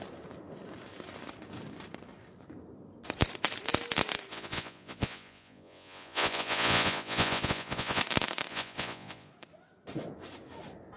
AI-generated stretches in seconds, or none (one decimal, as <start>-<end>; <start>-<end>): 4.3-8.0; 8.5-9.3